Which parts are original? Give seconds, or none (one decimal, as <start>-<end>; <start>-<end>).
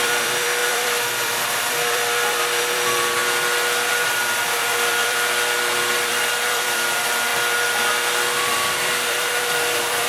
3.2-3.9; 7.3-8.5